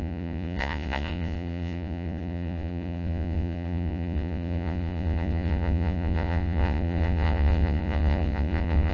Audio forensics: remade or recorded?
remade